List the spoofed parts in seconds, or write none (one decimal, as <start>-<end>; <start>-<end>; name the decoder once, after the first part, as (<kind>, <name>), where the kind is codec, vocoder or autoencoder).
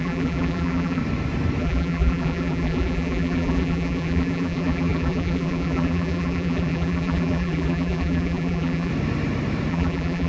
0.0-1.0 (vocoder, BigVGAN v2); 1.6-8.9; 9.7-10.3